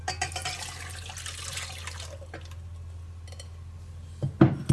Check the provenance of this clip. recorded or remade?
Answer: recorded